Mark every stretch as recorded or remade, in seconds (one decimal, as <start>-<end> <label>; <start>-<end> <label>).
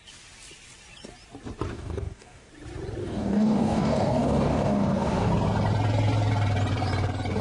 0.0-1.7 recorded; 1.7-2.5 remade; 2.5-3.0 recorded; 3.0-5.3 remade; 5.3-7.4 recorded